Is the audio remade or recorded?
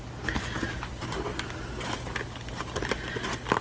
recorded